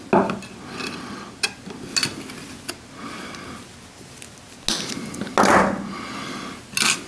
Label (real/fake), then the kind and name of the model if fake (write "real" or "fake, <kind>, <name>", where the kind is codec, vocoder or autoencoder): real